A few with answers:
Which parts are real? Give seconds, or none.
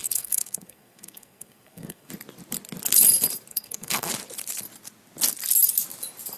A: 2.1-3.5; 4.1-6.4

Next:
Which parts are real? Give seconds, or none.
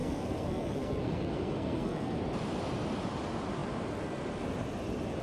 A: 2.2-5.2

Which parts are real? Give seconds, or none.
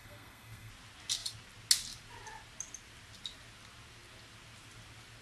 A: 0.7-5.2